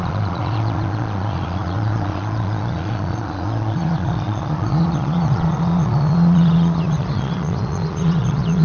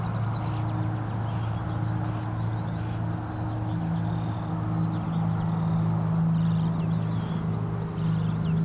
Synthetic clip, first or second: first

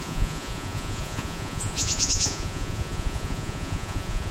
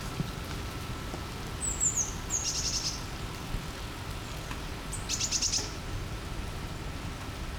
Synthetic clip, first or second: first